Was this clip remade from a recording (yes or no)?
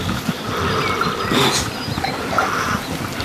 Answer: no